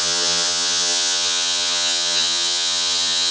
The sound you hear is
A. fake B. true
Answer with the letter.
A